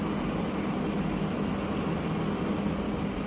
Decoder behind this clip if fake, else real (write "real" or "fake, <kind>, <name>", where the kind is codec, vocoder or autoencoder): real